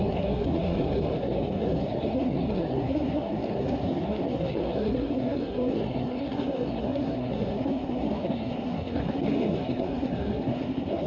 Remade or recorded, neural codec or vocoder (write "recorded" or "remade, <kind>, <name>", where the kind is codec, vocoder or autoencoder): remade, codec, SNAC